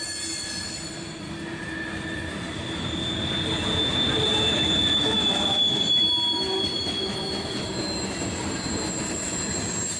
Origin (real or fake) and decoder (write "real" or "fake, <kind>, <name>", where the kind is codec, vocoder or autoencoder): real